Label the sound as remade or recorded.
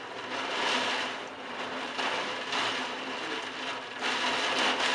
recorded